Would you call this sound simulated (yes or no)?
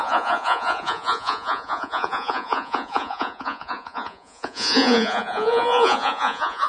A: yes